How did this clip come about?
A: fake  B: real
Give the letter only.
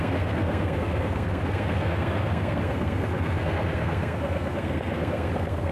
A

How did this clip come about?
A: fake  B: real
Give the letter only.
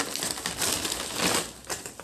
B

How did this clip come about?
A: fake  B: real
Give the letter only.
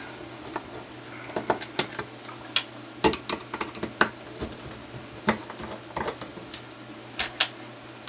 B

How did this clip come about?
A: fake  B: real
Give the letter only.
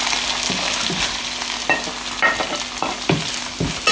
B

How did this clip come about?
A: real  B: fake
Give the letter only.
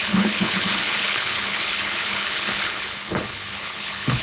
B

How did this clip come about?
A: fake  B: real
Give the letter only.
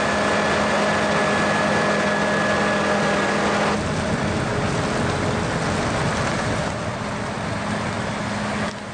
B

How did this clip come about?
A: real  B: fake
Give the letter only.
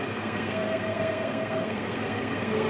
B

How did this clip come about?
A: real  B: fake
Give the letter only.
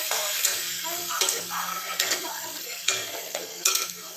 B